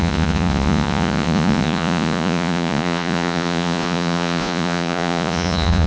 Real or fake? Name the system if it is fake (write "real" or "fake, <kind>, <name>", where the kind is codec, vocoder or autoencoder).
fake, vocoder, Vocos